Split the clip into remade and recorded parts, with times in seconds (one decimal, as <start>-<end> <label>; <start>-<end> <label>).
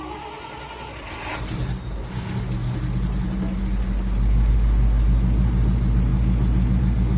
0.0-7.2 recorded